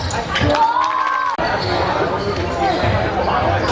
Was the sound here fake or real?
real